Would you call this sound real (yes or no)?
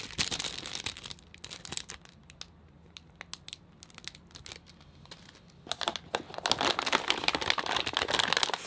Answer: yes